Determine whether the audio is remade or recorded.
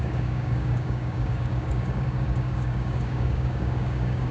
remade